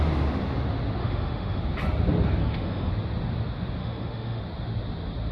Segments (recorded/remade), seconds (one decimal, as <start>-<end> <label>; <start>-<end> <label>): 0.0-1.0 recorded; 1.0-1.6 remade; 1.6-2.4 recorded; 2.4-2.9 remade; 2.9-3.8 recorded; 3.8-4.4 remade; 4.4-5.3 recorded